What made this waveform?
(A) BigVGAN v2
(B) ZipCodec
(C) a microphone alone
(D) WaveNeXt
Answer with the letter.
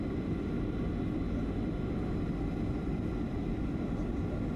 A